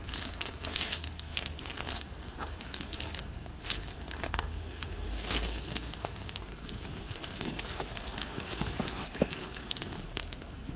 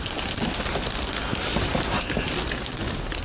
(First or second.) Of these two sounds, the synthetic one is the first